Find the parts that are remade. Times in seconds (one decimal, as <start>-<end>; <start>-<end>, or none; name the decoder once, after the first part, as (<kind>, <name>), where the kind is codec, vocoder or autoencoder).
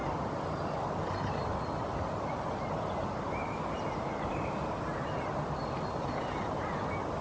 0.0-4.3 (vocoder, BigVGAN v2); 5.6-6.7